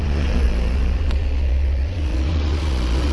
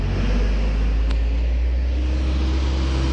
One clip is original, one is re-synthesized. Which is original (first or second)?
second